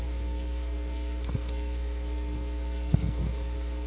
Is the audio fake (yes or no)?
yes